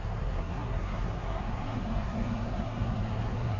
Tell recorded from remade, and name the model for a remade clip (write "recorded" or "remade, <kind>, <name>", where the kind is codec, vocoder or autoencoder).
remade, codec, SNAC